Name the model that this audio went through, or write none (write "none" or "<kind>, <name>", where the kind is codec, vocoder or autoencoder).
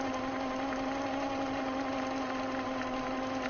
none